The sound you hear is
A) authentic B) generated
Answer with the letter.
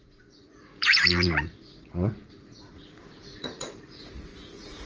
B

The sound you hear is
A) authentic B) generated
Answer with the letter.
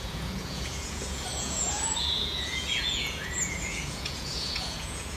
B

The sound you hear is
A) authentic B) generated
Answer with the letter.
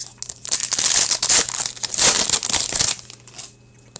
A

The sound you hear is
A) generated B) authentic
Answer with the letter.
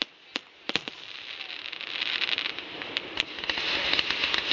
B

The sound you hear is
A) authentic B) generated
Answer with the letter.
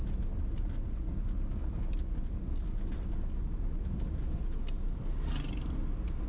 A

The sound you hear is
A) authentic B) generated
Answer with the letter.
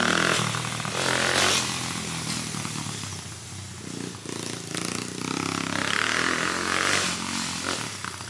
A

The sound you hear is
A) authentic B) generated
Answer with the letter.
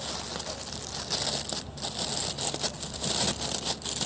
A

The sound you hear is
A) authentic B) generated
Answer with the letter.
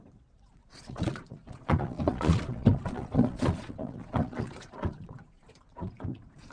B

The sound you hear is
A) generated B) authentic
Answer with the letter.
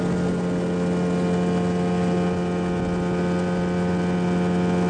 B